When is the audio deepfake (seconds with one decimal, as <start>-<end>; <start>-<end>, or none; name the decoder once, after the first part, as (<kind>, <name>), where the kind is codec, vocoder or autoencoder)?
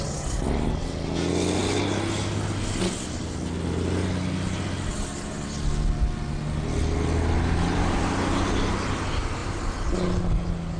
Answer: none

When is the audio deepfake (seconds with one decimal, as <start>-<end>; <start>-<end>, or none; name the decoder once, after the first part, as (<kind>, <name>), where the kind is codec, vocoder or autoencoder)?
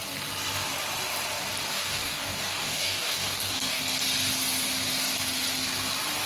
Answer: 1.7-3.8 (codec, DAC)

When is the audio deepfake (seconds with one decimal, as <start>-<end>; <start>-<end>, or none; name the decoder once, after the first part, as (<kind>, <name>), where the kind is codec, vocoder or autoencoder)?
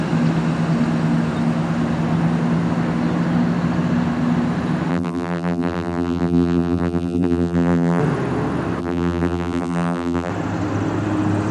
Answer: 4.9-8.0 (vocoder, BigVGAN v2); 8.8-10.3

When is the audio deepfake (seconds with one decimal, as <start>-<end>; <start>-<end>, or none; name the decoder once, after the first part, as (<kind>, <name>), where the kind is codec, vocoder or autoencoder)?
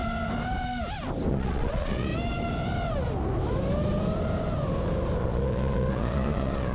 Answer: 1.3-2.1 (vocoder, Vocos); 5.2-6.7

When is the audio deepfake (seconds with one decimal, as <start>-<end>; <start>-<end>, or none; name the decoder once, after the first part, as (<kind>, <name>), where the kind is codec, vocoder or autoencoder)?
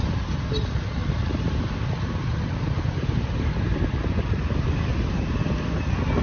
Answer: 1.0-4.7 (vocoder, BigVGAN v2)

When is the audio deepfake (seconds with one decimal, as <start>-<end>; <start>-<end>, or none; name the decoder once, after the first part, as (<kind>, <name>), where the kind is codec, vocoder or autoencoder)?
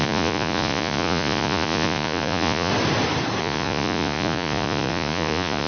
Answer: 0.0-2.7 (vocoder, Vocos); 3.4-5.7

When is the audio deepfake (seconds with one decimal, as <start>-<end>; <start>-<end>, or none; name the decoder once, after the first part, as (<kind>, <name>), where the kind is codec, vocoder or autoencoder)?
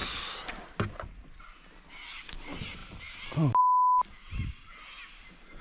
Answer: none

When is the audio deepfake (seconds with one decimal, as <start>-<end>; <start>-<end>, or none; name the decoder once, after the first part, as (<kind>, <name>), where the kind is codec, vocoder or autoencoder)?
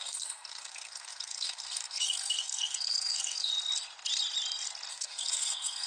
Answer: 0.0-3.5 (codec, SNAC); 4.9-5.9